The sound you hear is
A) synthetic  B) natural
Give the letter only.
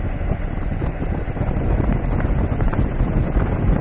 A